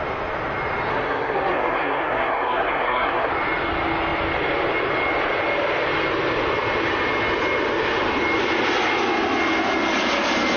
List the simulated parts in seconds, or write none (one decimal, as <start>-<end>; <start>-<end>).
0.9-3.3